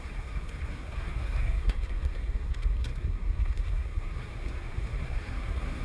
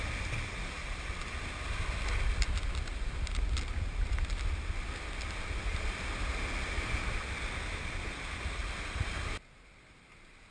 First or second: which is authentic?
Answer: second